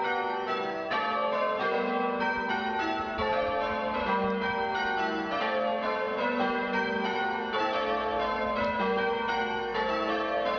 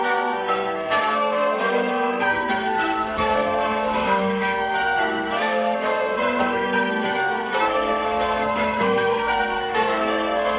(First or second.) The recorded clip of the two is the first